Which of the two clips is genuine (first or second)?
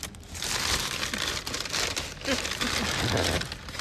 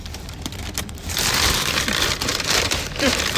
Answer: first